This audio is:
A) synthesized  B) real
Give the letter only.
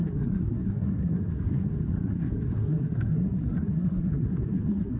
A